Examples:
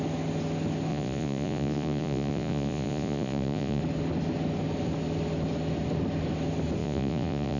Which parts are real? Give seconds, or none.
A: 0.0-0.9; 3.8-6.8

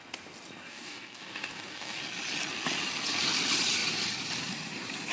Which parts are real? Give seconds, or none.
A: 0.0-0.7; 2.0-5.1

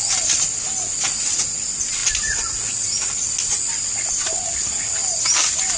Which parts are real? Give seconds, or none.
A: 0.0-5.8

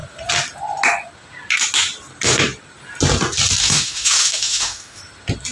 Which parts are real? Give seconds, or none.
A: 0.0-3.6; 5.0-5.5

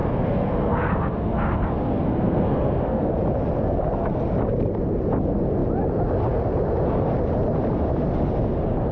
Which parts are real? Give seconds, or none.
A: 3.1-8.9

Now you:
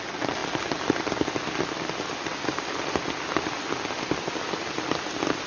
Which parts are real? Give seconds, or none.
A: 0.0-5.5

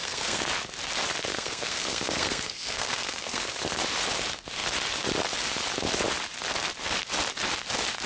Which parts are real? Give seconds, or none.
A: 0.5-1.3; 3.8-8.1

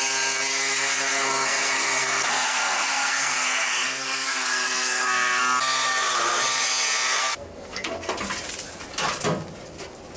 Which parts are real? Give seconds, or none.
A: 0.0-0.5; 5.4-7.2; 8.1-10.2